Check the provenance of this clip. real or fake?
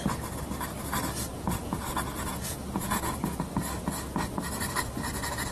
real